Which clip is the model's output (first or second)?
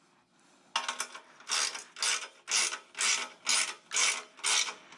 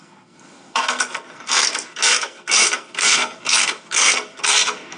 second